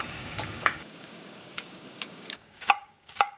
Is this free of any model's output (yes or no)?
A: no